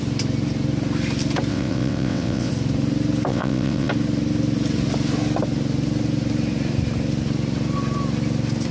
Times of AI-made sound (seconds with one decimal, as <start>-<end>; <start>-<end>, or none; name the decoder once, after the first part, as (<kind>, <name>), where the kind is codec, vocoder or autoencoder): 1.5-2.5 (vocoder, WaveNeXt); 3.3-3.9